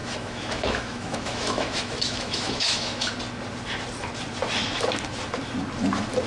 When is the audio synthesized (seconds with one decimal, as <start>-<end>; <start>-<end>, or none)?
0.0-3.1